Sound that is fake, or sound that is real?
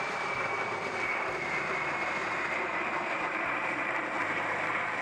fake